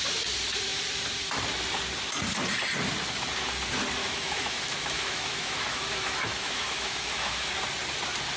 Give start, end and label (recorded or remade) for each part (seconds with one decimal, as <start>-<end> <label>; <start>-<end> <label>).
0.0-4.0 recorded; 4.0-7.5 remade; 7.5-8.4 recorded